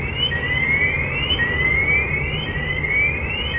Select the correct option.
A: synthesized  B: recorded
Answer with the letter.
B